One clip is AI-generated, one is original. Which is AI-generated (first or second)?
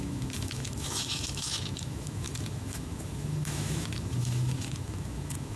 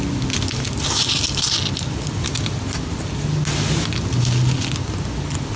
first